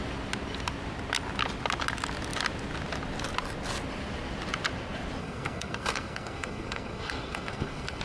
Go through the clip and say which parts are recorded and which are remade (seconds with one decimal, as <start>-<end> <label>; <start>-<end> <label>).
0.0-5.2 recorded; 5.2-8.0 remade